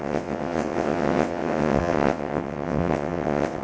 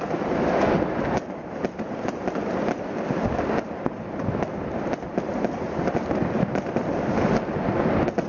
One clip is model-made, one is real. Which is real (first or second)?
second